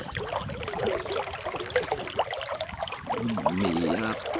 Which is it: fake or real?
real